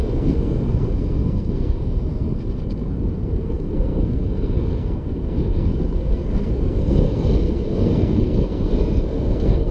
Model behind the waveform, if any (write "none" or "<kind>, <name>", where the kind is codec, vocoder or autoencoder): codec, SNAC